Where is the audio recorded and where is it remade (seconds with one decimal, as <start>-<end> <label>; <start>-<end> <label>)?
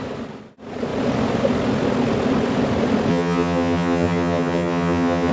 0.0-3.1 recorded; 3.1-5.3 remade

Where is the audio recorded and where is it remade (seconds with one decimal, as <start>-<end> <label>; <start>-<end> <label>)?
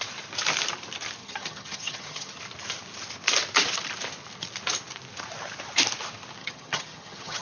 0.0-1.2 recorded; 1.2-2.4 remade; 2.4-6.4 recorded; 6.4-7.4 remade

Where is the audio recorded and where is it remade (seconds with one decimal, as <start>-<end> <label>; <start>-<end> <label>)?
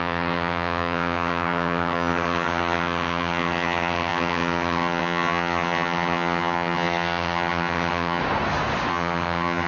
0.0-8.2 remade; 8.2-8.9 recorded; 8.9-9.7 remade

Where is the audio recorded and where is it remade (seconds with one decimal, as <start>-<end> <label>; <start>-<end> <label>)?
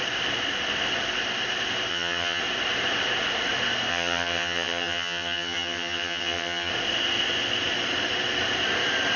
0.0-1.9 recorded; 1.9-2.4 remade; 2.4-3.9 recorded; 3.9-6.7 remade; 6.7-9.2 recorded